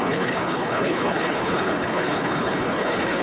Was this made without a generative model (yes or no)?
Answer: no